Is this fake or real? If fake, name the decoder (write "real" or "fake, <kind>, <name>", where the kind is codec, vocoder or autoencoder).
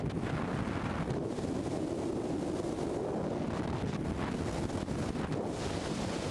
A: real